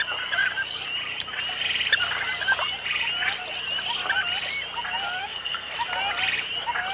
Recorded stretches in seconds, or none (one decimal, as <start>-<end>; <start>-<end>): 0.0-5.2; 5.7-6.9